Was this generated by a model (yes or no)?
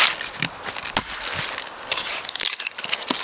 no